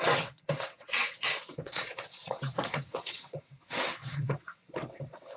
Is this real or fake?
fake